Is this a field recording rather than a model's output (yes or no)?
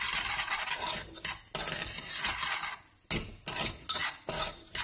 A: yes